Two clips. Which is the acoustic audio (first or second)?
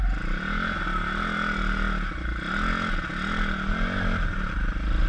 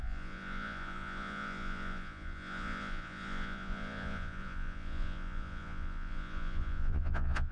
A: first